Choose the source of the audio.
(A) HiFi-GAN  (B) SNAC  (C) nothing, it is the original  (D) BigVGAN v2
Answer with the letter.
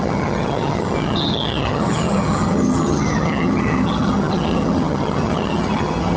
A